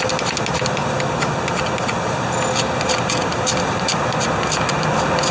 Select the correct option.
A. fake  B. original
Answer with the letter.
B